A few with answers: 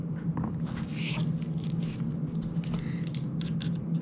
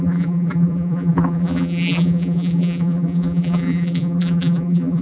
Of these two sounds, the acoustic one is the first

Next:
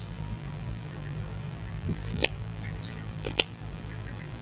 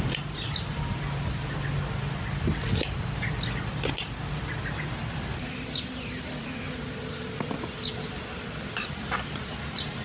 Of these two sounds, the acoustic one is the second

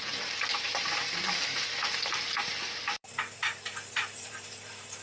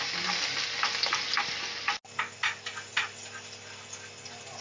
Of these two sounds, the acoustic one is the second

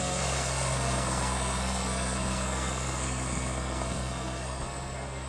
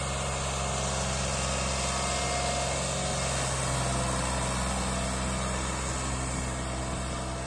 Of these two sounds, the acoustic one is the second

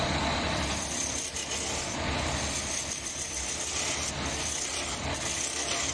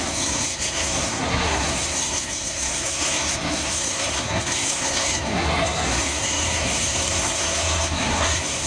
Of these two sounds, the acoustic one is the first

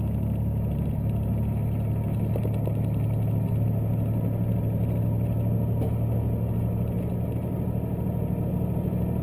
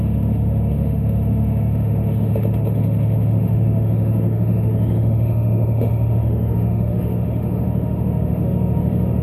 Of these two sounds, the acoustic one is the first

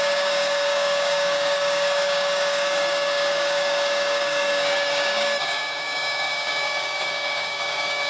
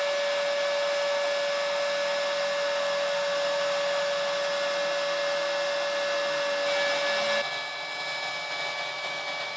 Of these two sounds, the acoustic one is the second